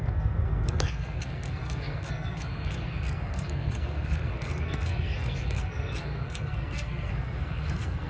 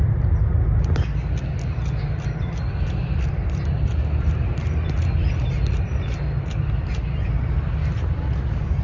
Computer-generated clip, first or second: first